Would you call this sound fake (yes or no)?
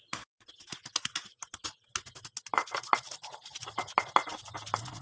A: no